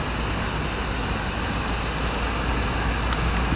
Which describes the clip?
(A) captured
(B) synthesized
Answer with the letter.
A